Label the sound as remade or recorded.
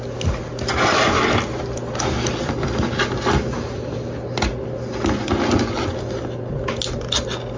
recorded